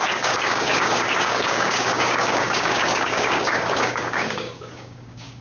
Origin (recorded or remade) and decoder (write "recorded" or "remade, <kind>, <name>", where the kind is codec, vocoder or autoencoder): remade, codec, DAC